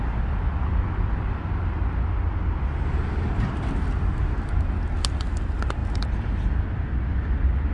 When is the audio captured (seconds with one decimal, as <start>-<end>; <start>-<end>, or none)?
0.0-5.8; 6.6-7.7